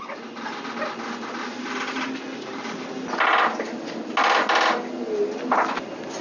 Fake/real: real